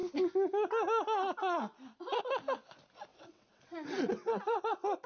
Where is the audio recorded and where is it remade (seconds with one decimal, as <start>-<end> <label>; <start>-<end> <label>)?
0.0-3.1 recorded; 3.1-5.1 remade